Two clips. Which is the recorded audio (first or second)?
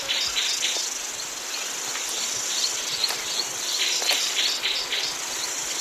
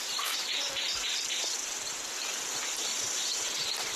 first